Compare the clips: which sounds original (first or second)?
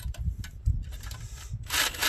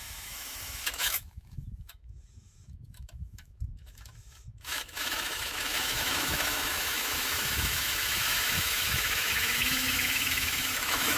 first